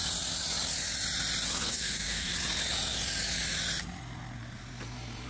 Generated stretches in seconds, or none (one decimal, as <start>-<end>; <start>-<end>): 1.7-2.3